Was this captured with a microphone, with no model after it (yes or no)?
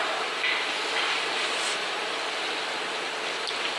yes